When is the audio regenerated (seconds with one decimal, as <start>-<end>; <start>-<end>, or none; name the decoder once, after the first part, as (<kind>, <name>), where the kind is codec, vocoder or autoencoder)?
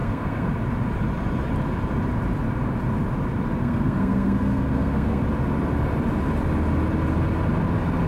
0.0-0.5 (codec, SNAC); 3.6-5.2